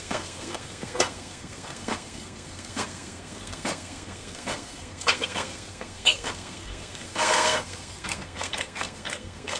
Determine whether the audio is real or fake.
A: fake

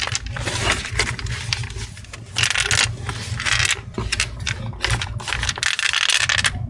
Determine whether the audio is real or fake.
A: real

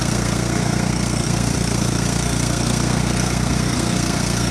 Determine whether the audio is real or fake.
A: fake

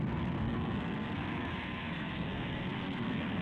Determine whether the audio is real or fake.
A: fake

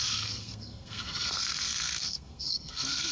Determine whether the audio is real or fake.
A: fake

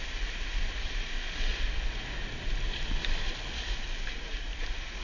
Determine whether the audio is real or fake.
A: real